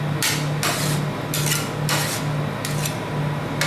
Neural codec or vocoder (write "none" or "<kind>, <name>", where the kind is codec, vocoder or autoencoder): none